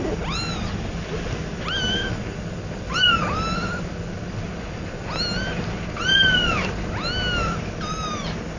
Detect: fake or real real